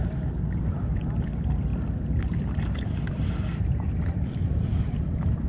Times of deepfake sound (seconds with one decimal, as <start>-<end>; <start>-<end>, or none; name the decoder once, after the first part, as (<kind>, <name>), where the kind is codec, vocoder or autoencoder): 0.0-1.7 (vocoder, BigVGAN v2); 3.1-5.5